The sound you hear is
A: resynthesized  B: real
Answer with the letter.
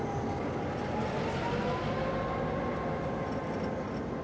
B